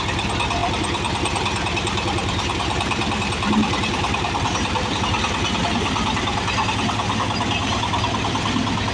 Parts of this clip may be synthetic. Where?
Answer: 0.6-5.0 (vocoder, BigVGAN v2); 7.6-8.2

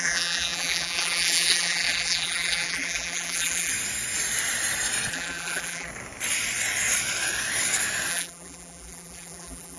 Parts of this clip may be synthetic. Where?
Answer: 0.0-3.7 (vocoder, BigVGAN v2); 5.1-5.9; 8.1-9.8

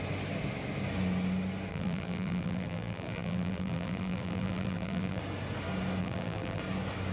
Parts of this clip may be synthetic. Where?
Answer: 1.7-5.2 (vocoder, BigVGAN v2); 6.0-6.6

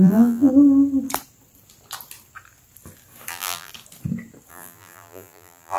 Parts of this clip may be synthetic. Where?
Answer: 0.0-0.5 (vocoder, BigVGAN v2); 3.3-3.7; 4.5-5.8

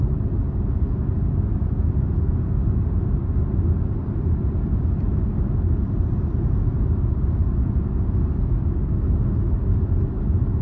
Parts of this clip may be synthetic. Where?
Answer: none

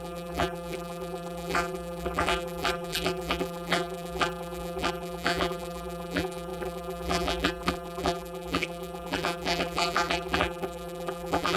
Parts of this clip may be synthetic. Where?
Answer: 0.0-11.6 (vocoder, BigVGAN v2)

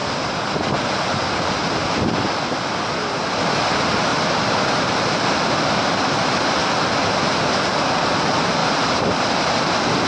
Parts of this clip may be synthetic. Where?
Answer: 0.0-2.0 (vocoder, BigVGAN v2); 8.6-9.4

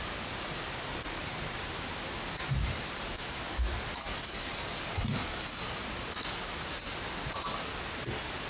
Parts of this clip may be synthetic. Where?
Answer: 1.2-3.1 (vocoder, BigVGAN v2)